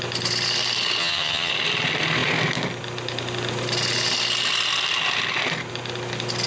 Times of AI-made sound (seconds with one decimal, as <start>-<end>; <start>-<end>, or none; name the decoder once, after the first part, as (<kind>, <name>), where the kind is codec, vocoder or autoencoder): 1.0-1.5 (vocoder, HiFi-GAN)